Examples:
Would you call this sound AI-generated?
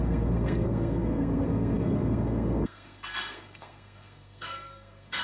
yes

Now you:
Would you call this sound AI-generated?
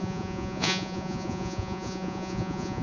yes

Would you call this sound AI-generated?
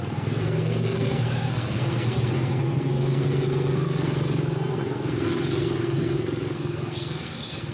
yes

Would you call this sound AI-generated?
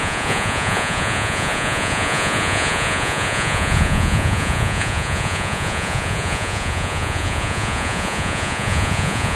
yes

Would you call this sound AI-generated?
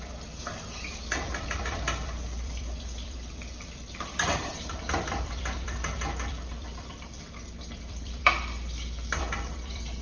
yes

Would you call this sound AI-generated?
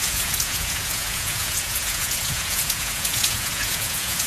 yes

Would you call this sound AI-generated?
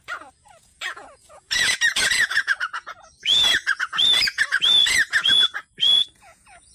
yes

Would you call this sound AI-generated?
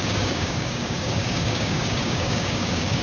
yes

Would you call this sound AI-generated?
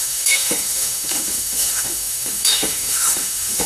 yes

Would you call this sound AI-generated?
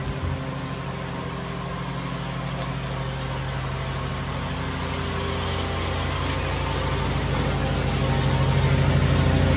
no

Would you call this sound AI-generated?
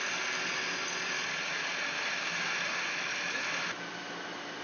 no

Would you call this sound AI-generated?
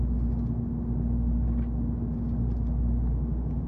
no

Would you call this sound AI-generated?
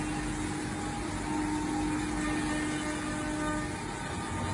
no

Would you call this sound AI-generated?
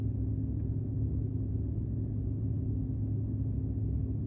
no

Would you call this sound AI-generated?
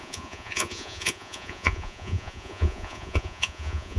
yes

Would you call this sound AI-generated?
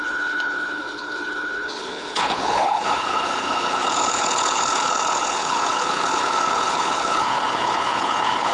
yes